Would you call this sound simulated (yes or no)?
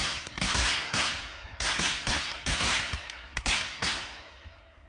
yes